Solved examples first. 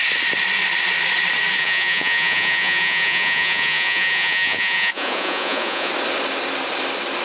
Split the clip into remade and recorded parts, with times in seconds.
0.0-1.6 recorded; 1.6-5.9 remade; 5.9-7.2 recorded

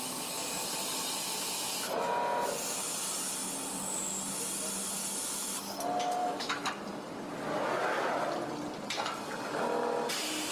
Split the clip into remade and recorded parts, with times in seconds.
0.0-6.2 recorded; 6.2-6.7 remade; 6.7-10.5 recorded